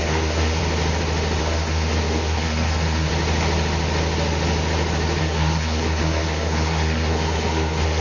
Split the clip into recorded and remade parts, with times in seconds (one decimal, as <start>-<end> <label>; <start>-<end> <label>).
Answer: 0.0-0.6 remade; 0.6-1.4 recorded; 1.4-3.1 remade; 3.1-5.2 recorded; 5.2-8.0 remade